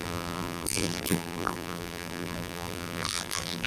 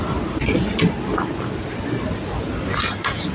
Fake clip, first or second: first